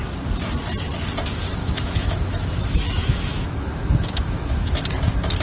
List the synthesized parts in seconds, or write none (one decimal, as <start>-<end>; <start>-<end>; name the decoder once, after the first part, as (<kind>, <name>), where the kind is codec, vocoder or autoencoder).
1.6-4.8 (autoencoder, DAC-VAE)